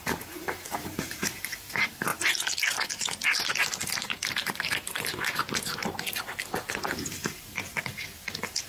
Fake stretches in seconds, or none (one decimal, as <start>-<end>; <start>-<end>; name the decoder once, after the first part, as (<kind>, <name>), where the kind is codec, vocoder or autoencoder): 0.0-2.1 (vocoder, BigVGAN v2); 3.6-5.8